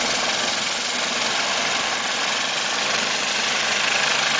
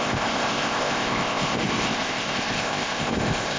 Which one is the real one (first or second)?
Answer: first